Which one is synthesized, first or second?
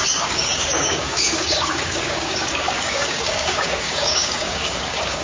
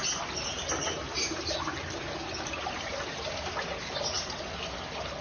first